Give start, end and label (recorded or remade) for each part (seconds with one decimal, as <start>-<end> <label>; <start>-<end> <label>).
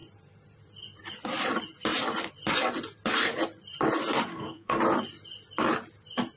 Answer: 0.0-4.3 recorded; 4.3-4.8 remade; 4.8-6.4 recorded